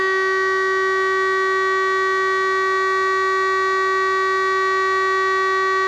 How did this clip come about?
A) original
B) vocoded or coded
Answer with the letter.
A